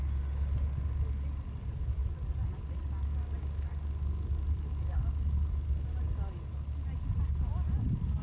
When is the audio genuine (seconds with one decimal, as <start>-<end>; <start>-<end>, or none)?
0.0-8.2